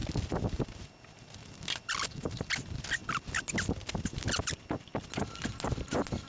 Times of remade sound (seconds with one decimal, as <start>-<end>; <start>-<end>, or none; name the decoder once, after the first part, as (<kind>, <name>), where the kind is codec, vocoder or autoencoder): none